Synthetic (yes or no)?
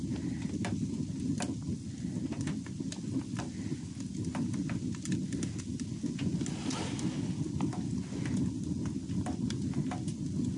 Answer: no